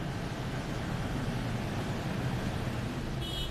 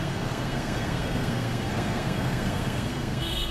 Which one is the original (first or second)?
first